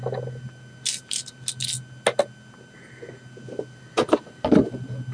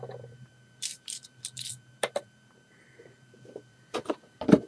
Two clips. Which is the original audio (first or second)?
first